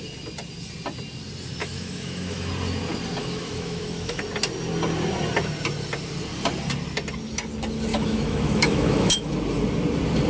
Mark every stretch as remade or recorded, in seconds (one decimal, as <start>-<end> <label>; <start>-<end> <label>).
0.0-1.6 recorded; 1.6-2.5 remade; 2.5-3.2 recorded; 3.2-4.2 remade; 4.2-7.9 recorded; 7.9-9.3 remade; 9.3-10.3 recorded